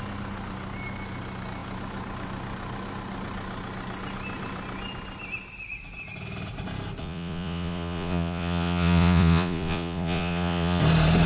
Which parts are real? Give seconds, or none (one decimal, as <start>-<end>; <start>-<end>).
0.0-7.0; 10.8-11.3